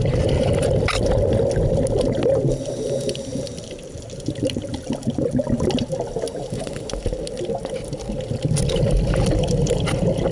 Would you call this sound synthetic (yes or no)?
no